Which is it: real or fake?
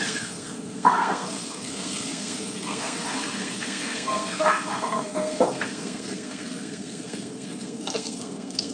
fake